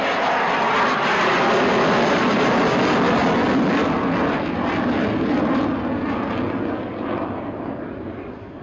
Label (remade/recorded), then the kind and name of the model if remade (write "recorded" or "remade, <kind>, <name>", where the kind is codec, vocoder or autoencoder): recorded